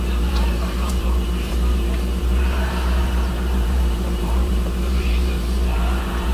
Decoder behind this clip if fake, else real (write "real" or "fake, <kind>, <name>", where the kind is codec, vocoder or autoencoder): fake, vocoder, BigVGAN v2